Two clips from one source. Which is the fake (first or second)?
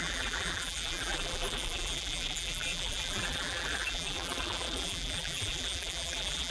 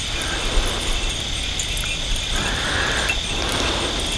first